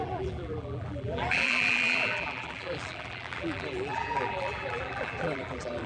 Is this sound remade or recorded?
remade